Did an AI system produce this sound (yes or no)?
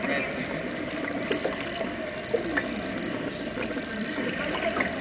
yes